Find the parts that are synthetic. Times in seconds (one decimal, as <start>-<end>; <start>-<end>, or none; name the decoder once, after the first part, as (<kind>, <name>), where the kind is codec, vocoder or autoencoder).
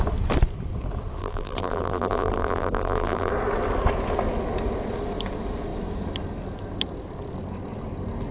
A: 1.2-3.3 (vocoder, BigVGAN v2)